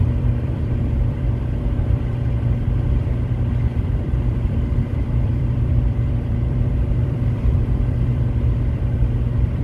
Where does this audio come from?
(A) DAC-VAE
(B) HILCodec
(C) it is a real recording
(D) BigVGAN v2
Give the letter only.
D